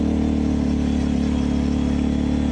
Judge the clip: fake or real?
real